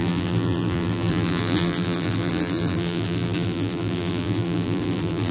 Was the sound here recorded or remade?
remade